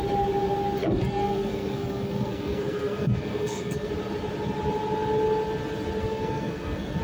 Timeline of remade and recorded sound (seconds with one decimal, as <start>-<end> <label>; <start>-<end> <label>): 0.0-0.8 recorded; 0.8-3.9 remade; 3.9-6.0 recorded; 6.0-7.0 remade